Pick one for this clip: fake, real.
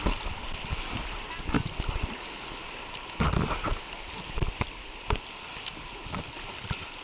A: real